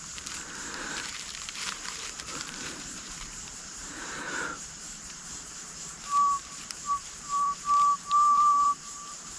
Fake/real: fake